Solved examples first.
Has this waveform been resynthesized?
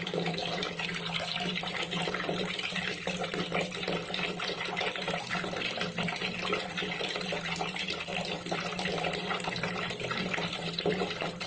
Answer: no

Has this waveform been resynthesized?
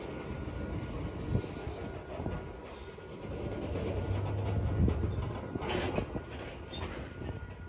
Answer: no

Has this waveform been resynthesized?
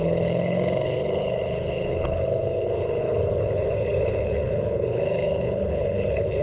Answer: yes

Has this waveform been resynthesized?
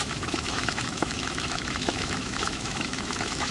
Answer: yes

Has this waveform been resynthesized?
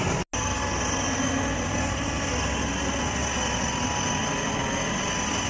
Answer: no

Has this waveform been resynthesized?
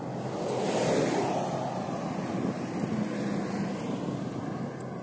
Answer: no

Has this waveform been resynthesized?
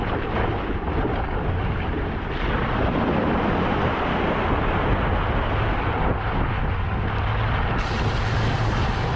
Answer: no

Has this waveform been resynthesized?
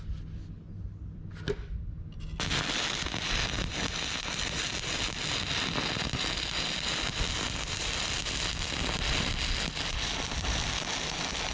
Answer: no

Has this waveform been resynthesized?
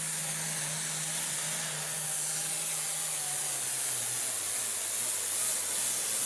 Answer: no